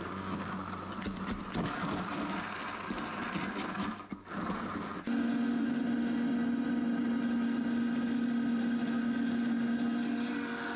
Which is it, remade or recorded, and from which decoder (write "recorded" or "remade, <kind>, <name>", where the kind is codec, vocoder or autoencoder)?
recorded